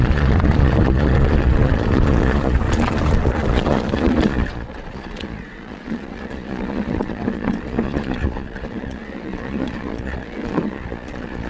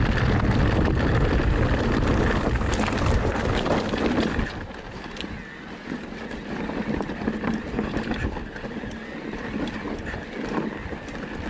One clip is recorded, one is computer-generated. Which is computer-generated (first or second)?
first